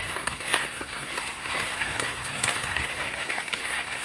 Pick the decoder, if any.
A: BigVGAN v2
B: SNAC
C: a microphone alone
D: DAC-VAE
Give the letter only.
B